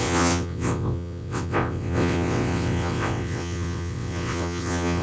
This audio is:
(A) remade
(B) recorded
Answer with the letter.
A